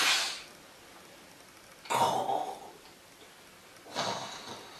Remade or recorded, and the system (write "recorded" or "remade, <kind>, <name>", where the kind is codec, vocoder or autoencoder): recorded